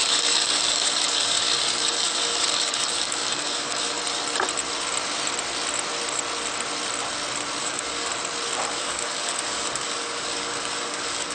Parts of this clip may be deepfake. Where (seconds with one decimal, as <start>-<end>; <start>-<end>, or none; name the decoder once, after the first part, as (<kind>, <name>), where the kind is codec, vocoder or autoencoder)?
0.0-4.0 (codec, DAC); 7.6-8.1; 8.7-11.3